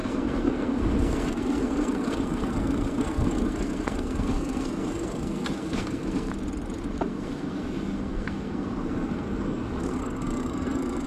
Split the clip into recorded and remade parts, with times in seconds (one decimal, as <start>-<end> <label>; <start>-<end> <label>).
0.0-6.3 remade; 6.3-6.9 recorded; 6.9-11.1 remade